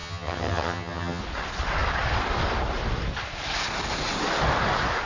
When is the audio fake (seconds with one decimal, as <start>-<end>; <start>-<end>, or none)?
0.0-1.2